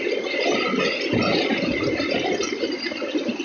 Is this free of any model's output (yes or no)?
yes